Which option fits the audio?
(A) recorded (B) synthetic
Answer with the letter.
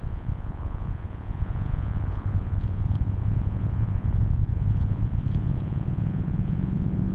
B